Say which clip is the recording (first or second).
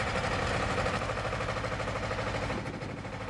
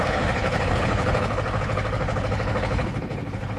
first